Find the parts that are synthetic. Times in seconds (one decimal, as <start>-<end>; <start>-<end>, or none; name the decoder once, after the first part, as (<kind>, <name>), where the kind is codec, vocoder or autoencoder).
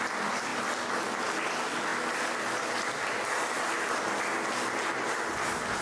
none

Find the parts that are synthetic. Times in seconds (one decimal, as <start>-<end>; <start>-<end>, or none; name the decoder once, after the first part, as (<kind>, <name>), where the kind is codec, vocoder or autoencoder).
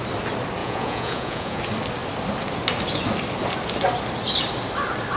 0.6-1.6 (vocoder, Vocos)